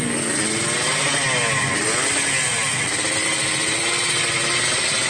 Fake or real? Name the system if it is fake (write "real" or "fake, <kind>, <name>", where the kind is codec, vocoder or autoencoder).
real